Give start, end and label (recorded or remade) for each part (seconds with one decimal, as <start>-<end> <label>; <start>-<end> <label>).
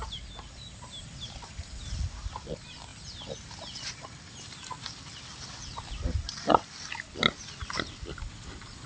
0.0-8.9 recorded